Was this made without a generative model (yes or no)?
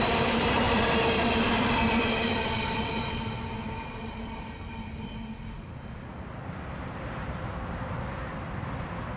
no